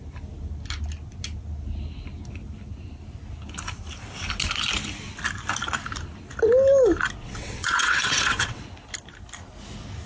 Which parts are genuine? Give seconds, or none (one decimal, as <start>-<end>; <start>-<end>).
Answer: 0.0-7.2; 8.6-10.1